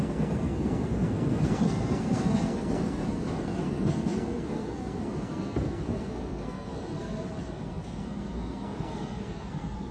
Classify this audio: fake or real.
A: fake